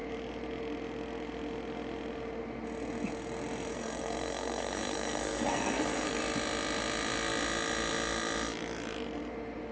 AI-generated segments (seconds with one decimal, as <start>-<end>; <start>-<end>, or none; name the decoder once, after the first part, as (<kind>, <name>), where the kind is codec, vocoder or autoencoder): 3.7-6.2 (codec, SNAC)